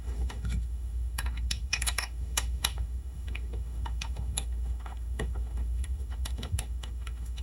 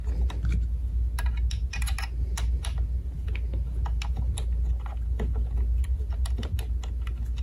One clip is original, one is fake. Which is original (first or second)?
second